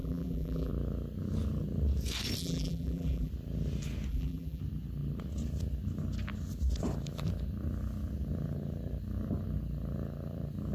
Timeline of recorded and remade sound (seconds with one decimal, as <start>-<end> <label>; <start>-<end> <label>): 0.0-0.7 remade; 0.7-2.4 recorded; 2.4-3.3 remade; 3.3-4.1 recorded; 4.1-4.6 remade; 4.6-10.7 recorded